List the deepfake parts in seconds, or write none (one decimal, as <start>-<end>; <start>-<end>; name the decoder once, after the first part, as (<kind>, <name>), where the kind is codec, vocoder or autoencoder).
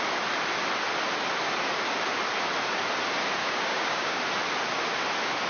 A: 3.4-4.2 (codec, DAC)